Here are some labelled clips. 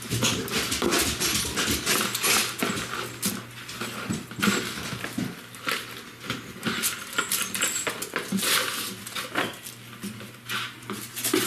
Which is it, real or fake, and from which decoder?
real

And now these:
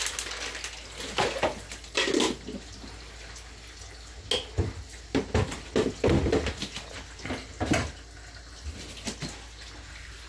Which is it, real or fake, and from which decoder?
real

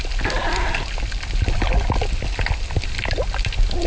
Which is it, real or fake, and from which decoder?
real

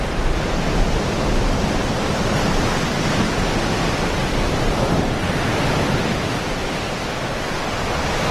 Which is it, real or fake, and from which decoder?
real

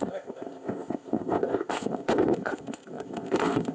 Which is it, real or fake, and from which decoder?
fake, codec, ZipCodec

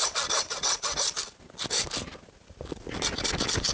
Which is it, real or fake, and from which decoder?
real